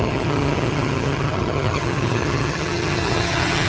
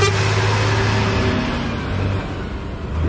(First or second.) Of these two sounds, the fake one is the first